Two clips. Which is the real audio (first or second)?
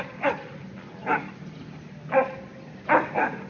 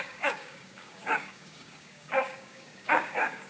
first